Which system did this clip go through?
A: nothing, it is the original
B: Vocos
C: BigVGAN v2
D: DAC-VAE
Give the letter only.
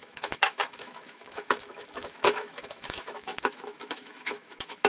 D